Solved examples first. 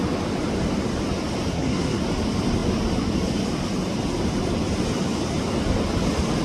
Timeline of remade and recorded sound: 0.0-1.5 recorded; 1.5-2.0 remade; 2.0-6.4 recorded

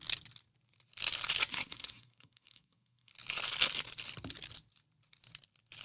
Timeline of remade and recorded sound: 0.0-1.5 recorded; 1.5-3.1 remade; 3.1-5.8 recorded

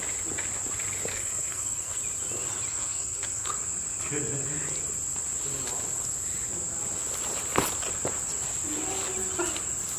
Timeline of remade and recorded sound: 0.0-1.1 recorded; 1.1-2.0 remade; 2.0-2.7 recorded; 2.7-3.5 remade; 3.5-10.0 recorded

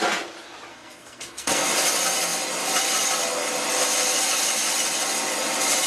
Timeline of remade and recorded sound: 0.0-0.7 recorded; 0.7-1.7 remade; 1.7-5.9 recorded